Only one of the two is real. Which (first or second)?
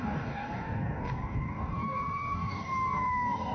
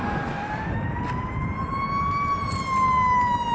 second